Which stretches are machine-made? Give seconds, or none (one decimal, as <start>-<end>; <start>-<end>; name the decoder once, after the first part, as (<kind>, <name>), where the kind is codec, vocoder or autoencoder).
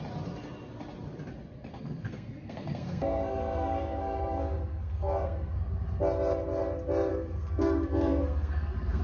1.7-5.6 (codec, SNAC); 7.1-9.0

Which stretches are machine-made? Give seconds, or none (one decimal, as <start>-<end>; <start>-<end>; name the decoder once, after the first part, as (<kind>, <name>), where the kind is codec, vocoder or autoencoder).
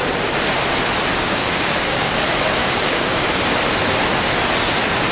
1.2-2.1 (codec, DAC); 2.6-3.3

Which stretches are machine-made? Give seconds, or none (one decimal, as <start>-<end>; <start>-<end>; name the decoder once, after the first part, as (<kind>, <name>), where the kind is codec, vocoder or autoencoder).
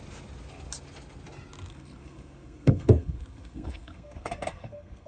1.7-5.1 (codec, SNAC)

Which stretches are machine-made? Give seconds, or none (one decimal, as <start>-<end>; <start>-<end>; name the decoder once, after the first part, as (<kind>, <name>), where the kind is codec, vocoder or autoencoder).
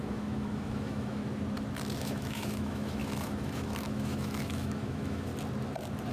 0.0-1.2 (autoencoder, DAC-VAE); 2.0-5.3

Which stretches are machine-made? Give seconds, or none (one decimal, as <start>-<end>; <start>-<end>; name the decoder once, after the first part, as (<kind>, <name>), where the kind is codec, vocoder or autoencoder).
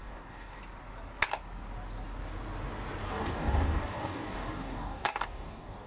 0.0-0.6 (codec, DAC); 3.0-5.9